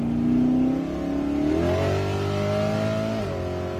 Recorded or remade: recorded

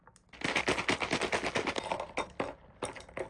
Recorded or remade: recorded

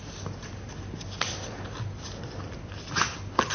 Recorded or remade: recorded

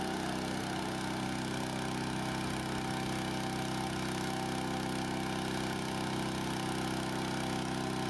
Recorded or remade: recorded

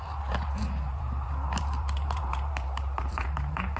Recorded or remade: remade